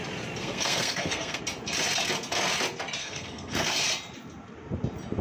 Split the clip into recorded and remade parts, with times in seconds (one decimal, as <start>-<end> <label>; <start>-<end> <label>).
0.0-0.4 recorded; 0.4-1.4 remade; 1.4-3.0 recorded; 3.0-3.8 remade; 3.8-5.2 recorded